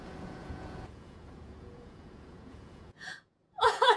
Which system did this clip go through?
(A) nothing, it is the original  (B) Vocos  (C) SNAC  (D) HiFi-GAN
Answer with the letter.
B